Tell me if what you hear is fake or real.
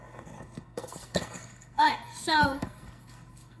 fake